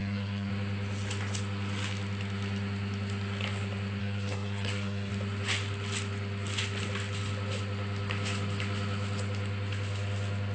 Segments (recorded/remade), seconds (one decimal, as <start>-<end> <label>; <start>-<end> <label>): 0.0-0.5 remade; 0.5-4.0 recorded; 4.0-5.1 remade; 5.1-10.5 recorded